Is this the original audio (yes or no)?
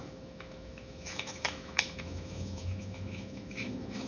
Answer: no